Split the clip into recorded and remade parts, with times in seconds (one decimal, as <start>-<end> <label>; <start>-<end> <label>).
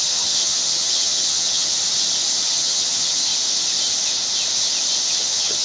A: 0.0-1.7 remade; 1.7-2.4 recorded; 2.4-3.3 remade; 3.3-5.1 recorded; 5.1-5.6 remade